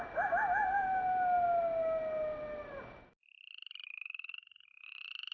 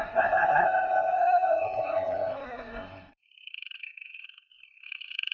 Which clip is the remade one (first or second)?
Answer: second